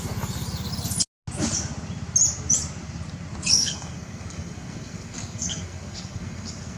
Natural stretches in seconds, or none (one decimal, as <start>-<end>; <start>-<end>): 0.0-3.5